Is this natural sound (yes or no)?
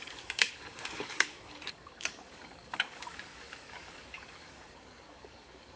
no